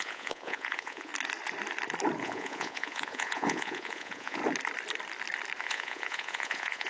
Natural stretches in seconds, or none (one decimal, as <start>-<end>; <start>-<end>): 1.1-2.2; 4.4-5.6